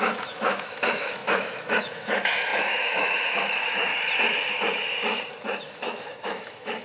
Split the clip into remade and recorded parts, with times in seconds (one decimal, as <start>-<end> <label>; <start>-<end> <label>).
0.0-3.9 remade; 3.9-5.6 recorded; 5.6-6.8 remade